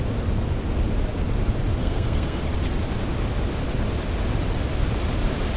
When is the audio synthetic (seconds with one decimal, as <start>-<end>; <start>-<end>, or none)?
1.8-2.4